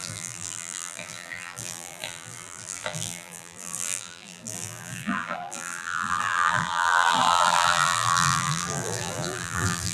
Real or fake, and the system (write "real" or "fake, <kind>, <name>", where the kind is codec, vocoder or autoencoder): fake, vocoder, BigVGAN v2